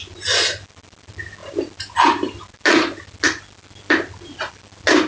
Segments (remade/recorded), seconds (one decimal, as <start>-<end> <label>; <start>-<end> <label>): 0.0-5.1 recorded